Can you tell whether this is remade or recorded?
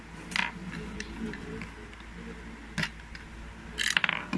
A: recorded